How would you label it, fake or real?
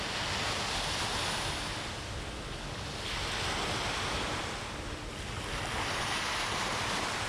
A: real